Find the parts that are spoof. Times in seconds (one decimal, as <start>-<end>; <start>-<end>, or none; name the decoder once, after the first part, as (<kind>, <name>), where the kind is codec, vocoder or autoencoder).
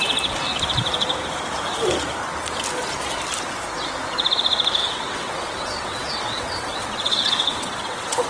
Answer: 4.8-8.3 (vocoder, WaveNeXt)